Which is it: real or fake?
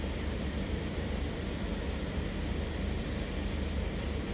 real